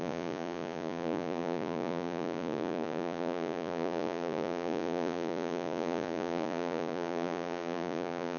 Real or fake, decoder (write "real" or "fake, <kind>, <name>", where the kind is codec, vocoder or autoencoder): fake, vocoder, Vocos